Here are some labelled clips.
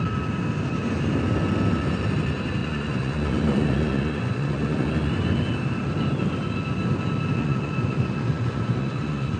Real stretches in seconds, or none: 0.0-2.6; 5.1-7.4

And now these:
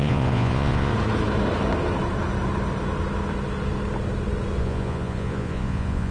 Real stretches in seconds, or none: 0.9-4.6

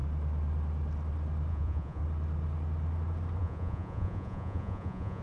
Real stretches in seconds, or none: 0.0-1.5; 2.0-3.4

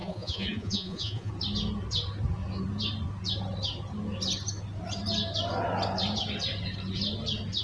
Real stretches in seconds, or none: 1.3-7.6

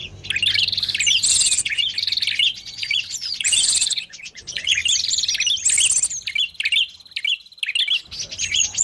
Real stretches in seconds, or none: 0.0-1.3; 1.8-2.6; 4.8-8.4

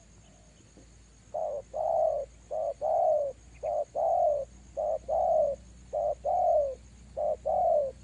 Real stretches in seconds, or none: 0.0-8.0